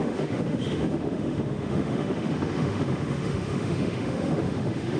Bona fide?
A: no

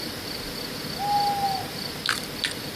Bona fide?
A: yes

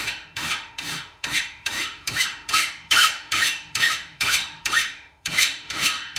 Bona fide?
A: no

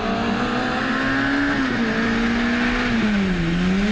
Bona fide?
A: yes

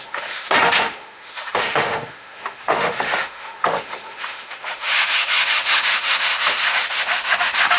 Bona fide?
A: no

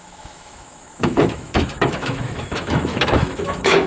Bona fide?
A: no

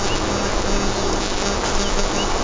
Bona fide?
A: yes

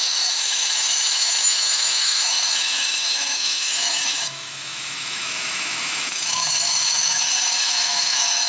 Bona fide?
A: no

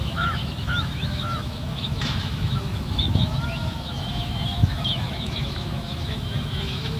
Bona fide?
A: no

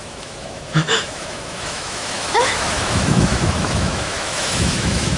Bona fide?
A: no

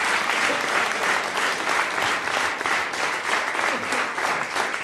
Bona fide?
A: yes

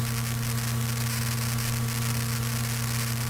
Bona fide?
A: yes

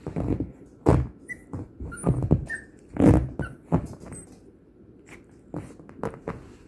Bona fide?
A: yes